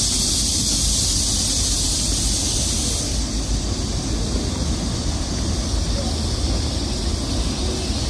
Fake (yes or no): no